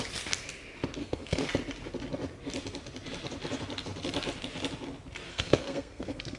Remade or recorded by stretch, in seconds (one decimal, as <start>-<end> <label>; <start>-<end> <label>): 0.0-1.0 recorded; 1.0-1.5 remade; 1.5-5.3 recorded; 5.3-6.4 remade